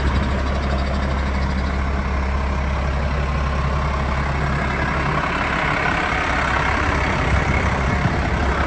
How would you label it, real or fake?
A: real